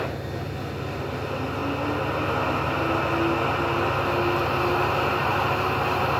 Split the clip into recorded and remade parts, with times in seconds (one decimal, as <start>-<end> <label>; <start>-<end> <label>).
0.0-6.2 recorded